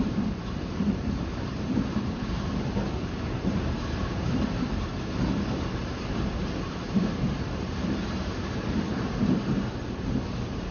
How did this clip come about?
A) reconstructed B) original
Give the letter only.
A